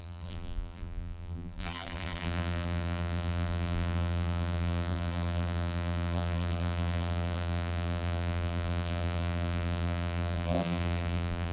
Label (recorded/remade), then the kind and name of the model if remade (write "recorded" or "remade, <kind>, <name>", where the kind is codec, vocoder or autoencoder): remade, vocoder, BigVGAN v2